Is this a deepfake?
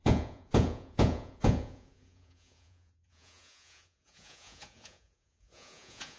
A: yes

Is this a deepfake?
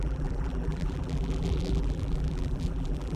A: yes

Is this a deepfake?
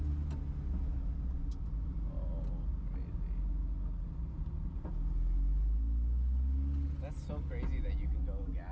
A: no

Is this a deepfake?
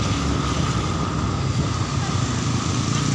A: no